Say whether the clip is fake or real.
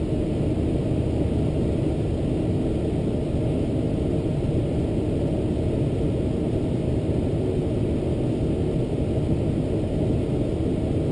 real